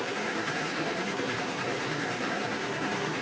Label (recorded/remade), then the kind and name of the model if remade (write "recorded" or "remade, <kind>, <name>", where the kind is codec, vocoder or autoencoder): remade, codec, SNAC